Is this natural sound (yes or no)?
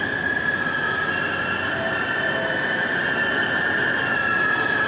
yes